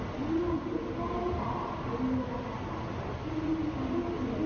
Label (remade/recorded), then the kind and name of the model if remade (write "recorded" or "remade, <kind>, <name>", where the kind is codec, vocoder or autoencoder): recorded